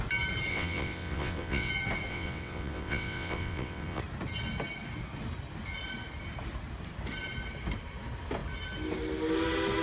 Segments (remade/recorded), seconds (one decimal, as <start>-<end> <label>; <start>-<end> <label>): 0.0-0.5 recorded; 0.5-1.7 remade; 1.7-2.1 recorded; 2.1-4.0 remade; 4.0-9.8 recorded